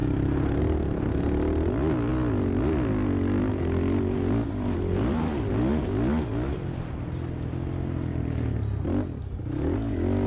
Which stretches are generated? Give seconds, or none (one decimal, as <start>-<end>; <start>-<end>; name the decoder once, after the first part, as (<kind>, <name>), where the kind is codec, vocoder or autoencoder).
0.0-0.6 (vocoder, BigVGAN v2); 2.1-5.5